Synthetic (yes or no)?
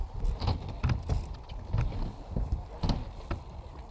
no